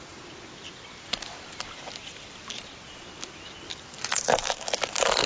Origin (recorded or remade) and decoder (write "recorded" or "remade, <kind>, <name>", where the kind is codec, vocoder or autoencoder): recorded